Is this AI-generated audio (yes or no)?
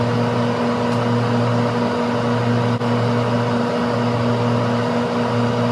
no